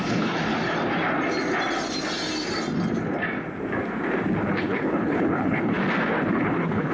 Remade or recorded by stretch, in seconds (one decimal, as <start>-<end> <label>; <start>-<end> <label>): 0.0-0.4 remade; 0.4-4.5 recorded; 4.5-5.8 remade; 5.8-6.3 recorded; 6.3-6.9 remade